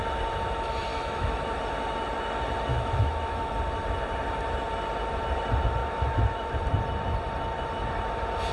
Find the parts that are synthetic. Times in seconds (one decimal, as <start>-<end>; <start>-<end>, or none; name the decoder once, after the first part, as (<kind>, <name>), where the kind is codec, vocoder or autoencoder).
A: 0.9-1.6 (autoencoder, DAC-VAE); 2.7-3.5; 5.8-6.5